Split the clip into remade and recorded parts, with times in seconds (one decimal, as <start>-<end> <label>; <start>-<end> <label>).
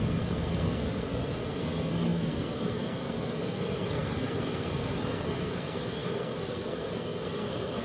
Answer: 0.0-7.8 remade